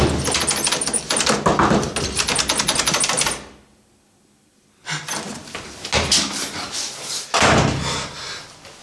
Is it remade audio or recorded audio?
recorded